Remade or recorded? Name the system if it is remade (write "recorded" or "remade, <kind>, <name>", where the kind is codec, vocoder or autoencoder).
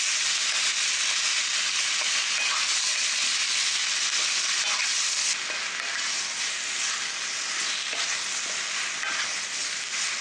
recorded